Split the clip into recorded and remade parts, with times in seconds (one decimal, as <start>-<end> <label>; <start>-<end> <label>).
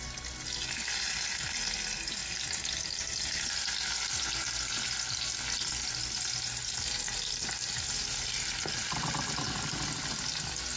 0.0-10.8 recorded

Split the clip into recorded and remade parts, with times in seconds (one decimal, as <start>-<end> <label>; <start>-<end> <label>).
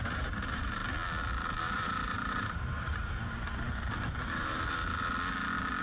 0.0-0.8 remade; 0.8-1.6 recorded; 1.6-3.0 remade; 3.0-5.8 recorded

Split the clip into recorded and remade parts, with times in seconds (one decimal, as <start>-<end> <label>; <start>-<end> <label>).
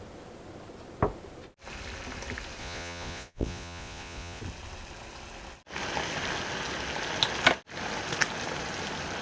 0.0-2.6 recorded; 2.6-4.4 remade; 4.4-9.2 recorded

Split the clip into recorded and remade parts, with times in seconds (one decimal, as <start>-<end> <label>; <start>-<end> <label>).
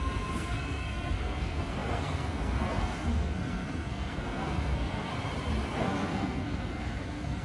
0.0-5.1 remade; 5.1-5.8 recorded; 5.8-7.4 remade